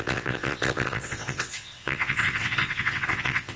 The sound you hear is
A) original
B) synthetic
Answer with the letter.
B